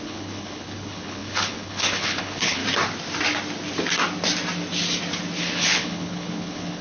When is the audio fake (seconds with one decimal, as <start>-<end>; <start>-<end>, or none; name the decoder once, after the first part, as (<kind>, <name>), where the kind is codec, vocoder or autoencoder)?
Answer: 0.0-2.6 (codec, HILCodec); 5.4-6.8